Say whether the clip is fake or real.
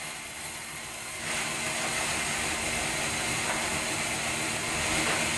real